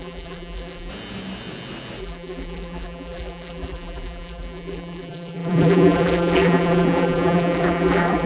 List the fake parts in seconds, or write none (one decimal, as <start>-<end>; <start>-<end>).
0.0-0.9; 2.0-8.3